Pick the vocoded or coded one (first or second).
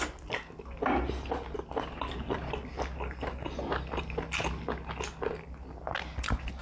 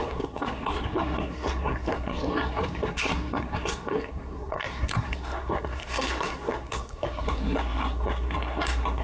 second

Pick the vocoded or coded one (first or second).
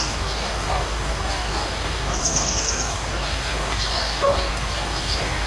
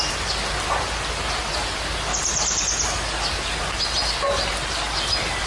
first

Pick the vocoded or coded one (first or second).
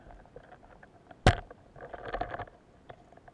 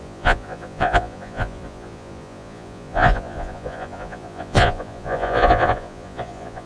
second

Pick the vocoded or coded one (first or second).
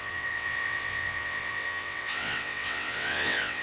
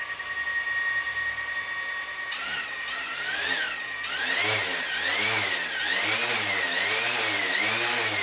first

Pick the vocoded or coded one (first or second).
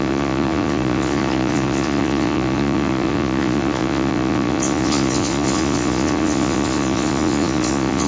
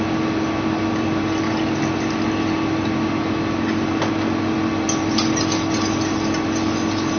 first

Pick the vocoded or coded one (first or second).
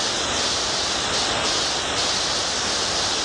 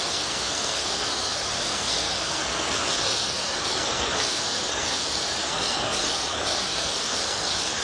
second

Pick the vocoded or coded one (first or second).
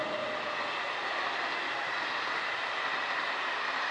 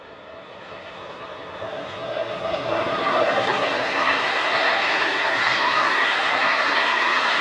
second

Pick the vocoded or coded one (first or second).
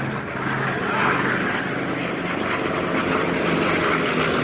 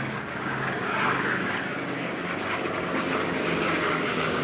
second